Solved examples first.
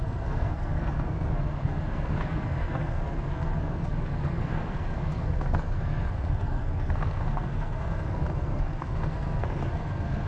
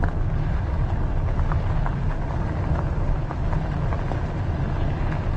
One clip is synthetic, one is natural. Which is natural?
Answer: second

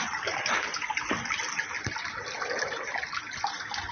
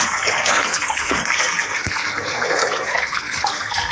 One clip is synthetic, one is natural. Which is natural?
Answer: first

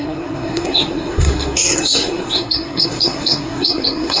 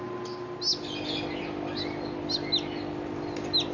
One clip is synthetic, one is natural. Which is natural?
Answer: second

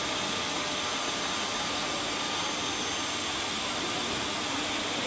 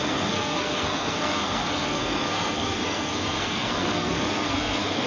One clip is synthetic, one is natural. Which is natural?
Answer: first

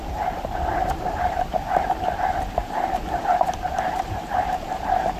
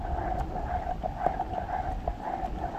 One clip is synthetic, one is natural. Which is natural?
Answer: second